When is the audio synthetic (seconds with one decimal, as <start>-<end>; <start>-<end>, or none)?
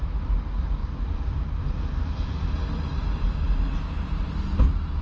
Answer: 0.8-2.5; 3.7-4.3